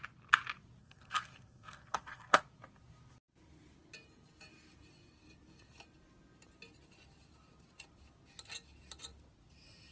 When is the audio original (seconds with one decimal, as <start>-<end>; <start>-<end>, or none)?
0.0-0.8; 2.4-9.9